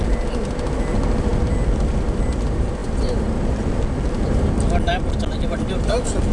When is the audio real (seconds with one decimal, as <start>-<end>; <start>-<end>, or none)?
0.0-6.3